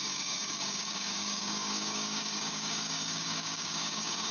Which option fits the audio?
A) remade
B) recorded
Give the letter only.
A